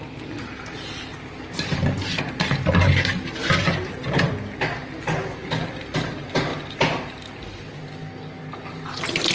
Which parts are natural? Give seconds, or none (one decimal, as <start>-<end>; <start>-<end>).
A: 0.0-9.3